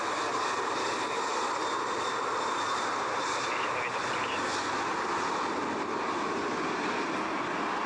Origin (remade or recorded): recorded